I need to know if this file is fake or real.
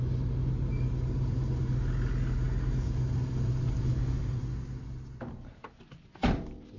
real